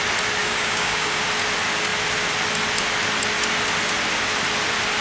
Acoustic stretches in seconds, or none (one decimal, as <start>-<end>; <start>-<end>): 0.0-0.4; 1.2-5.0